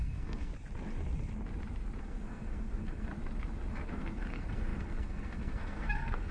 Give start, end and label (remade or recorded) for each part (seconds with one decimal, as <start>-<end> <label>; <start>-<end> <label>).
0.0-0.5 remade; 0.5-2.0 recorded; 2.0-3.1 remade; 3.1-3.7 recorded; 3.7-6.3 remade

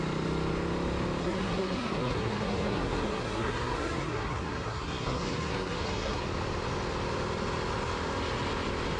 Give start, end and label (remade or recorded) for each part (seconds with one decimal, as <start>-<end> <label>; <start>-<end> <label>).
0.0-1.2 recorded; 1.2-6.2 remade; 6.2-9.0 recorded

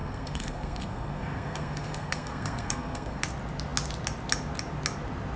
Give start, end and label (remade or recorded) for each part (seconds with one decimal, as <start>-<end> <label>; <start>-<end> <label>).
0.0-3.2 remade; 3.2-5.4 recorded

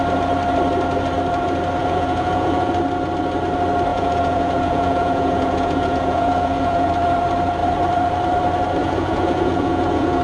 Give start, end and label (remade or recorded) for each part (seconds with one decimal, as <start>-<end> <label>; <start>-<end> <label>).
0.0-1.8 recorded; 1.8-2.7 remade; 2.7-3.9 recorded; 3.9-6.9 remade; 6.9-8.8 recorded; 8.8-10.2 remade